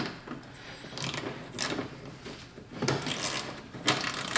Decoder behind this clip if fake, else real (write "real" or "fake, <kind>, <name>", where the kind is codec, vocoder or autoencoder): real